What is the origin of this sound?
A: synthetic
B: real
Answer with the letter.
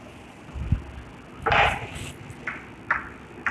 B